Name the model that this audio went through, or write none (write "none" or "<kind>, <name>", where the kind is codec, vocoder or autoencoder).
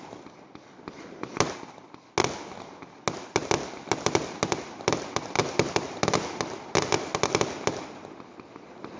none